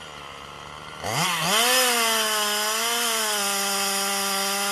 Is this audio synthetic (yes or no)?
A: no